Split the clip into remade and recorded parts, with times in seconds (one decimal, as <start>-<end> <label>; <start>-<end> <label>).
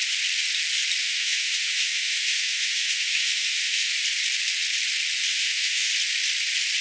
0.0-1.0 recorded; 1.0-3.9 remade; 3.9-5.3 recorded; 5.3-5.9 remade; 5.9-6.8 recorded